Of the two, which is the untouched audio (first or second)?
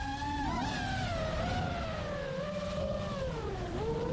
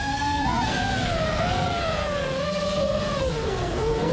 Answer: first